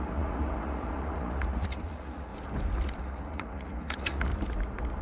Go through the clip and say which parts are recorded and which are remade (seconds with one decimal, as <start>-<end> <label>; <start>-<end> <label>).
0.0-2.3 remade; 2.3-3.0 recorded; 3.0-4.3 remade; 4.3-5.0 recorded